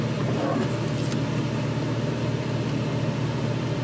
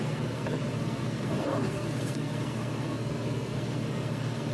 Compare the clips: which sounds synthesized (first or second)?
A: second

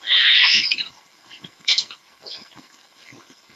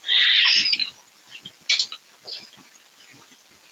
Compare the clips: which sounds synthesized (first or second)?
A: first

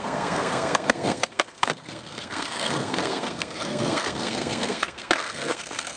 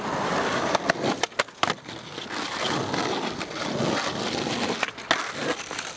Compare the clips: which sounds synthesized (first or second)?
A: first